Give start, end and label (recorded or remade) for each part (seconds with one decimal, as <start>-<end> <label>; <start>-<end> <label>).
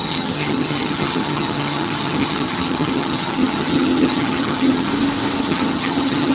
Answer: 0.0-4.9 remade; 4.9-5.4 recorded; 5.4-6.3 remade